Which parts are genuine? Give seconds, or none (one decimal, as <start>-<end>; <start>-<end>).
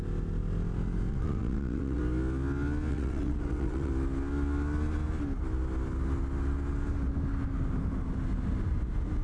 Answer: 0.0-1.1; 2.0-2.9; 3.9-9.2